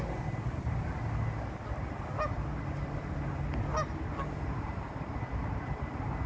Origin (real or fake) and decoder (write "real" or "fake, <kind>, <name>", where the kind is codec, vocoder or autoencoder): real